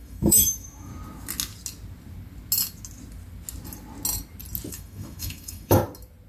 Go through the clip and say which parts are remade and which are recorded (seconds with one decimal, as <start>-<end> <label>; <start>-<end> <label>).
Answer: 0.0-0.9 remade; 0.9-4.7 recorded; 4.7-5.8 remade; 5.8-6.3 recorded